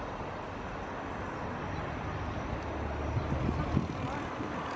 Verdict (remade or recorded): recorded